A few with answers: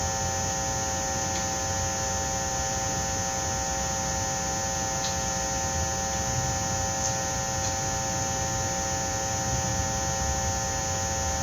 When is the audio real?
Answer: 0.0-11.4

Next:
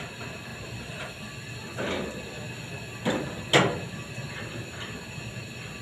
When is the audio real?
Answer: 0.0-5.8